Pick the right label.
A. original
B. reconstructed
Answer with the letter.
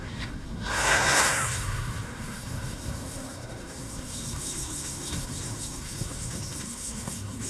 B